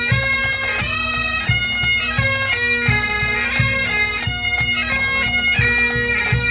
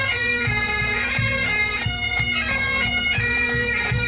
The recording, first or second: first